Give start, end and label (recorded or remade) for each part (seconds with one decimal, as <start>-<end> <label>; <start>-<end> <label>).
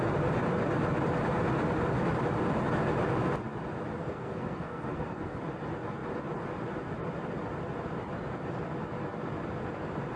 0.0-4.0 recorded; 4.0-5.4 remade; 5.4-10.2 recorded